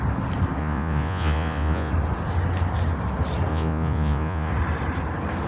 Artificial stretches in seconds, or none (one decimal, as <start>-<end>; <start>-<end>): 0.6-1.9; 3.5-4.5